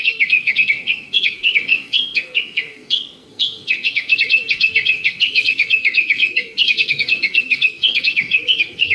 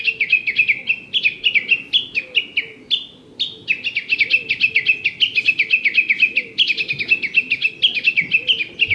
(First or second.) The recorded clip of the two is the second